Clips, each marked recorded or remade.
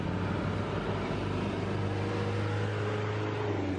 recorded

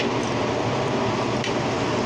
recorded